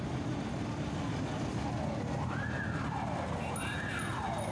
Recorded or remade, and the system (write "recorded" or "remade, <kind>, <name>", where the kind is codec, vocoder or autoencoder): recorded